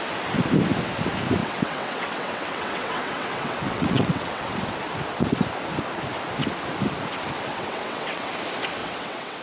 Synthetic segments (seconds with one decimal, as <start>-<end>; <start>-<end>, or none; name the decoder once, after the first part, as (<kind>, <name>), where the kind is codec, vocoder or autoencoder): 1.4-4.5 (vocoder, WaveNeXt); 7.5-8.3; 8.8-9.4